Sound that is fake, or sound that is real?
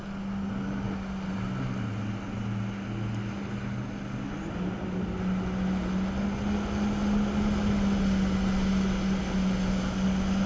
real